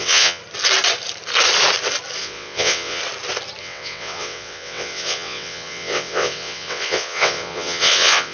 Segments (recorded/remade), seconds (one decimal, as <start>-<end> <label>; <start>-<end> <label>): 0.0-0.4 remade; 0.4-2.2 recorded; 2.2-3.0 remade; 3.0-3.6 recorded; 3.6-8.3 remade